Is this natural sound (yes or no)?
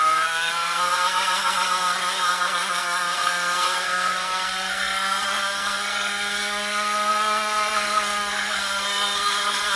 no